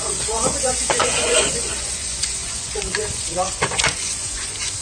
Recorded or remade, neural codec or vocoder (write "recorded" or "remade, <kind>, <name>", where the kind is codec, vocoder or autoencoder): remade, vocoder, Vocos